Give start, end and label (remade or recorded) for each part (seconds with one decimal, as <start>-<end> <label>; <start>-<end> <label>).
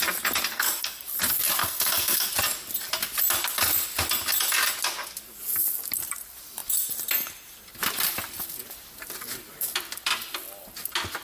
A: 0.0-0.5 recorded; 0.5-1.0 remade; 1.0-1.6 recorded; 1.6-2.3 remade; 2.3-11.2 recorded